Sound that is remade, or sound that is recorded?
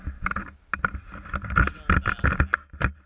recorded